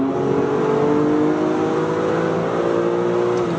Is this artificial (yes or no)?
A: no